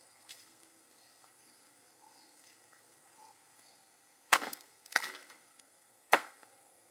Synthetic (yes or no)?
yes